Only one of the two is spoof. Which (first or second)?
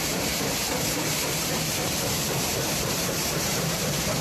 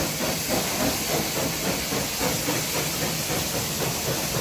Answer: first